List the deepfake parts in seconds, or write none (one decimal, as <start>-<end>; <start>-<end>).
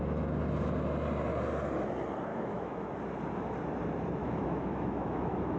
2.3-2.9; 4.2-5.6